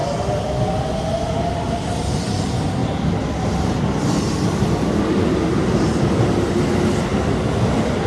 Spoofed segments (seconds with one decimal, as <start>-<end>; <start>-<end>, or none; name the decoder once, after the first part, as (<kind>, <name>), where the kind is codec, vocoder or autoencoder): 7.1-8.1 (vocoder, BigVGAN v2)